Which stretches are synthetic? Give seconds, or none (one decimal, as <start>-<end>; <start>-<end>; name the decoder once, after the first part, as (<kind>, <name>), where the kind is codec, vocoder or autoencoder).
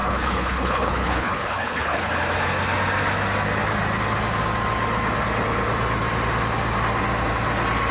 0.0-2.1 (codec, HILCodec)